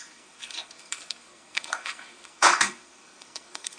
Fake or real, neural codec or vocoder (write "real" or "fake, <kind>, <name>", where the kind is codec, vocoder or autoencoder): fake, codec, SNAC